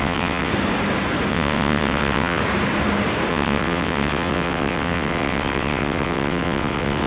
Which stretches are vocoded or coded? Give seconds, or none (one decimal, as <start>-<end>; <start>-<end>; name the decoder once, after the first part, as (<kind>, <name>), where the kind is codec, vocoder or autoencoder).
0.0-0.5 (vocoder, WaveNeXt); 1.3-2.4; 3.3-7.1